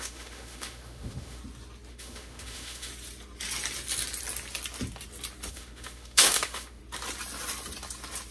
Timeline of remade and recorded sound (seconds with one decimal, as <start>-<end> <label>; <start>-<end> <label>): 0.0-1.4 remade; 1.4-1.9 recorded; 1.9-2.9 remade; 2.9-5.5 recorded; 5.5-6.8 remade; 6.8-8.3 recorded